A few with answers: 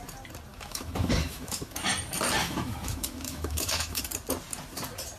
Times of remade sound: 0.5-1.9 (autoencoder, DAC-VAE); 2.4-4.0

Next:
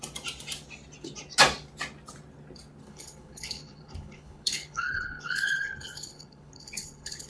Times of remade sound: 2.8-7.3 (codec, HILCodec)

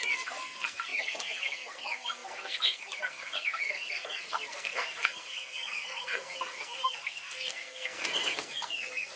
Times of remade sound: 0.0-9.2 (codec, SNAC)

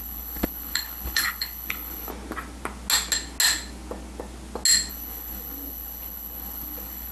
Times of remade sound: 0.0-2.1 (codec, HILCodec); 4.9-7.1

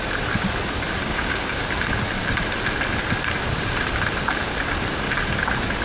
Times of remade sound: 1.0-1.6 (codec, DAC)

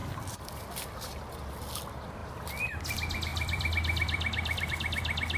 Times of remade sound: 0.0-1.2 (vocoder, BigVGAN v2); 2.2-2.8; 3.3-4.7